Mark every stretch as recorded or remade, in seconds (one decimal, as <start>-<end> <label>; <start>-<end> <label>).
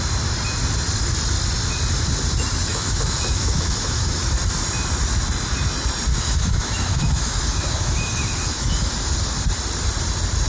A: 0.0-2.7 recorded; 2.7-4.3 remade; 4.3-6.1 recorded; 6.1-8.9 remade; 8.9-10.5 recorded